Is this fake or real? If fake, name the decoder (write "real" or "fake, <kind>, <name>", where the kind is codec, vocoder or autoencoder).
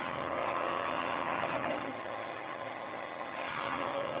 fake, vocoder, HiFi-GAN